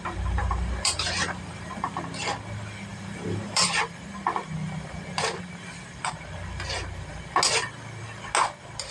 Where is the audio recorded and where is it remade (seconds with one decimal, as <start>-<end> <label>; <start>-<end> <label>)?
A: 0.0-0.4 recorded; 0.4-2.0 remade; 2.0-2.9 recorded; 2.9-3.8 remade; 3.8-8.9 recorded